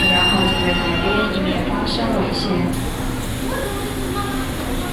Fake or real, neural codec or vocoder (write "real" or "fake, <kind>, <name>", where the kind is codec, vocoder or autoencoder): real